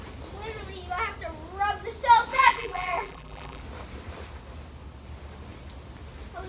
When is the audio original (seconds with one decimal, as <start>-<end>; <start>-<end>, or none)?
0.0-2.3; 3.6-6.5